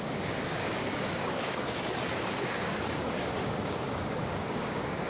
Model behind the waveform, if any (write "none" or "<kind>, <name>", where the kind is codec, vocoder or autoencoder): codec, DAC